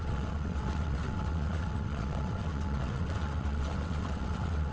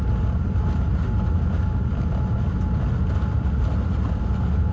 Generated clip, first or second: first